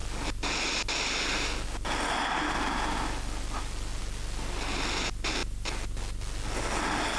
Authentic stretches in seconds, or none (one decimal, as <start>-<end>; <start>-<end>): 0.0-7.2